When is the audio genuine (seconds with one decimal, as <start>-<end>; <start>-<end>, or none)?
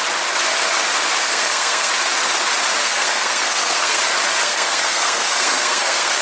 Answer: 0.0-1.2; 1.9-2.8; 4.0-4.4